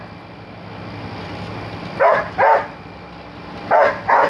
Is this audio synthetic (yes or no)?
no